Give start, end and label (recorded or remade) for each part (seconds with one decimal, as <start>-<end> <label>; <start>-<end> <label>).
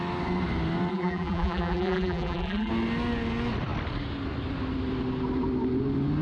0.0-0.9 recorded; 0.9-2.7 remade; 2.7-6.2 recorded